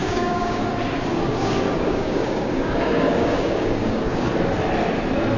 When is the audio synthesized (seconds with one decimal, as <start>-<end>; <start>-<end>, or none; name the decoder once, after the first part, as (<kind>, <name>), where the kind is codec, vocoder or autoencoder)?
0.0-0.6 (codec, DAC); 1.1-4.3